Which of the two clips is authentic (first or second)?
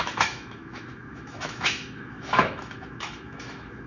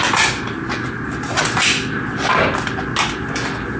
second